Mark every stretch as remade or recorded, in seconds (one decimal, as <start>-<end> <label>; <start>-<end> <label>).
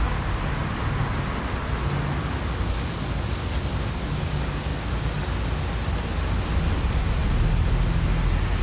0.0-8.6 recorded